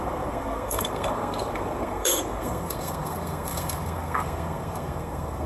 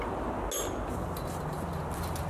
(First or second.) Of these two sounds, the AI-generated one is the first